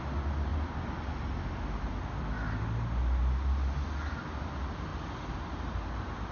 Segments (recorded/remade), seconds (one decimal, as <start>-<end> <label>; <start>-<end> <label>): 0.0-4.9 recorded; 4.9-6.3 remade